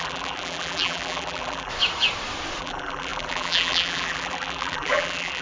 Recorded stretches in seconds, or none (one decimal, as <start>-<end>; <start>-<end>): 1.7-2.6